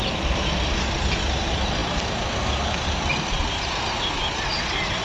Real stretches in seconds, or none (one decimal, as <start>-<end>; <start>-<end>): 0.0-5.0